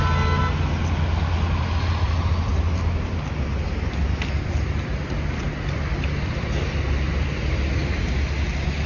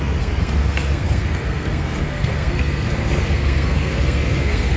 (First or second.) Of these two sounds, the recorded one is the first